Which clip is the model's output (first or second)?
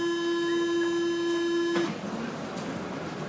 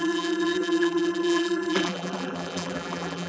second